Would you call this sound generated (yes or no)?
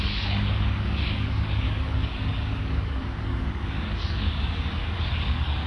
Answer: yes